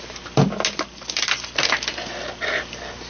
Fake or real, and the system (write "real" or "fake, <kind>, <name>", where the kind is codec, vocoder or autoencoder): real